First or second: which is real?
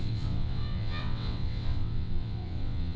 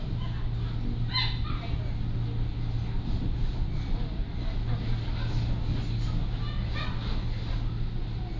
second